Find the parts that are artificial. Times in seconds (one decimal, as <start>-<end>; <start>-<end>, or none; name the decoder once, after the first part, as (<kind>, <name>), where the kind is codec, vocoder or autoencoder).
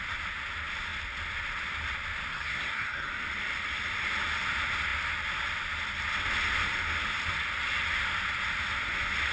2.3-3.1 (codec, SNAC)